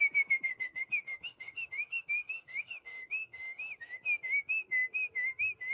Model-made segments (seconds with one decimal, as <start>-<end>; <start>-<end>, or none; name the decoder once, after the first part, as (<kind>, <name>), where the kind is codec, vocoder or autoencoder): 0.5-3.6 (codec, DAC)